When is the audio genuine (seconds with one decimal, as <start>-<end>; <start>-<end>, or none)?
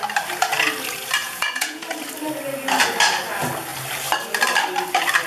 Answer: 0.0-1.2; 1.8-5.3